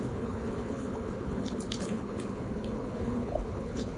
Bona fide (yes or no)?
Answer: no